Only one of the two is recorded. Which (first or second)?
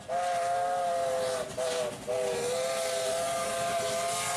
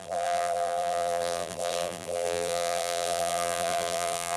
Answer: first